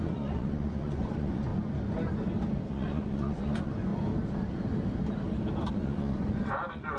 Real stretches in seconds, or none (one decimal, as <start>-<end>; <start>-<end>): 1.5-2.7; 3.9-5.7